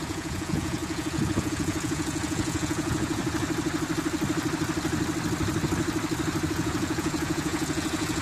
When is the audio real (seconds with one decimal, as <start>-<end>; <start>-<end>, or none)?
3.2-6.5